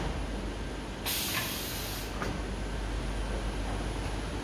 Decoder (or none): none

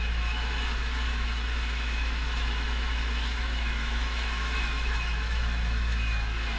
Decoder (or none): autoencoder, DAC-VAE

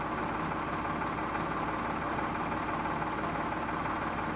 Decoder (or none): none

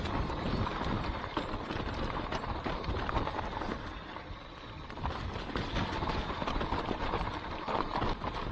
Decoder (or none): none